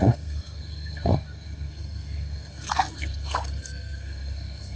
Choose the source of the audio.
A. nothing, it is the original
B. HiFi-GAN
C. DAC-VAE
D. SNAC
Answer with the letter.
D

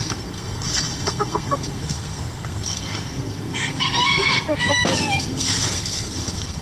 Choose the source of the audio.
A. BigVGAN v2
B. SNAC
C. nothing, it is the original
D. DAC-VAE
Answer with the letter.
B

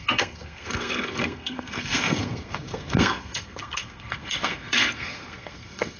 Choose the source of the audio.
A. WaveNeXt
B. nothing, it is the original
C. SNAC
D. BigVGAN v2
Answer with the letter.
C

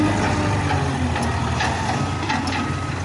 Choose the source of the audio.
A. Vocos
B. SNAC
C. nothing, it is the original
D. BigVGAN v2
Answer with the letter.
C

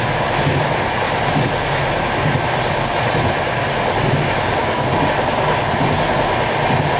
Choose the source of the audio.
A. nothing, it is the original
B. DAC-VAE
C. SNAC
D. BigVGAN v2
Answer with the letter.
A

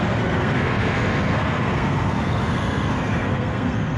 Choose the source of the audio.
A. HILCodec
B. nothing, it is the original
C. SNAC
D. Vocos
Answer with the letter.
C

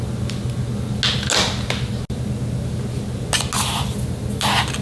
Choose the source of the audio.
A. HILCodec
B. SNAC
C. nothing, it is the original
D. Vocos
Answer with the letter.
C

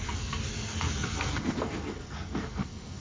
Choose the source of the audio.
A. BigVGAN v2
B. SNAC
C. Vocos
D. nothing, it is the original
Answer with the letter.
B